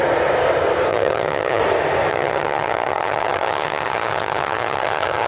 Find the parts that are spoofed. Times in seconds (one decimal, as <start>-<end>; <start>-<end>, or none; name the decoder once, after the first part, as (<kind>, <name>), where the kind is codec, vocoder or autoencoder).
0.9-1.6 (vocoder, HiFi-GAN); 2.1-5.3